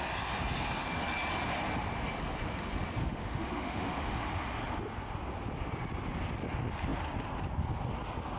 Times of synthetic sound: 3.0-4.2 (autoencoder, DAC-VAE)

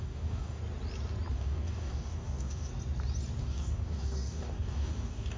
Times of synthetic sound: 0.0-0.6 (codec, DAC); 1.3-2.7; 3.4-5.4

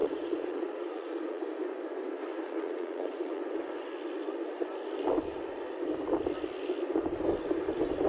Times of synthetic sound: 0.0-1.4 (vocoder, Vocos); 2.3-3.4

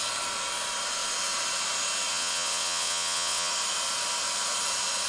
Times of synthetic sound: 2.1-3.5 (vocoder, WaveNeXt)

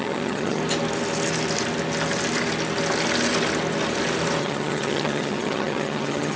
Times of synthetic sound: 0.0-0.6 (vocoder, HiFi-GAN); 4.4-6.4

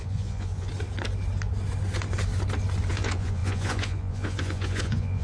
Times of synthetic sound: 0.0-0.7 (vocoder, Vocos); 2.9-5.2

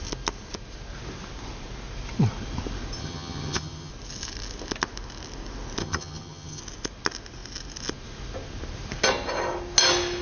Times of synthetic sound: 3.0-3.9 (vocoder, HiFi-GAN); 5.8-6.6